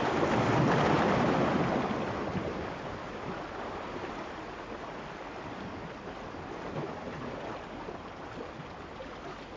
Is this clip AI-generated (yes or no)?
no